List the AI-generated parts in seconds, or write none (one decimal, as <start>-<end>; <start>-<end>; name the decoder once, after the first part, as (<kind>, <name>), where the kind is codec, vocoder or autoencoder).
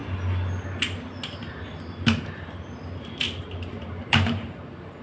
3.0-5.0 (vocoder, BigVGAN v2)